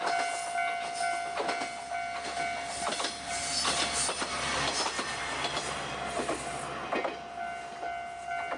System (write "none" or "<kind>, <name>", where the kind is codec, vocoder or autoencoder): none